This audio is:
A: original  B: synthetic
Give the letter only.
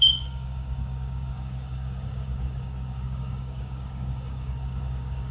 B